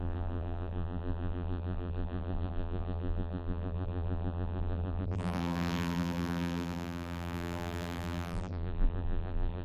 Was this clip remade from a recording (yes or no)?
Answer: yes